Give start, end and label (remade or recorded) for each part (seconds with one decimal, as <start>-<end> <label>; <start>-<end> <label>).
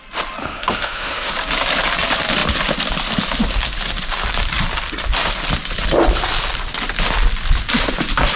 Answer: 0.0-0.4 recorded; 0.4-1.3 remade; 1.3-8.4 recorded